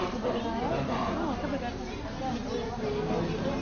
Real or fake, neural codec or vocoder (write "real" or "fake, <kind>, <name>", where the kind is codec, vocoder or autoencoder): real